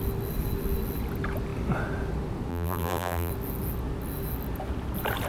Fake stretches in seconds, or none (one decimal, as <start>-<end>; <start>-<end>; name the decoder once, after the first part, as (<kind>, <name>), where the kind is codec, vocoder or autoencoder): 2.5-3.3 (vocoder, BigVGAN v2)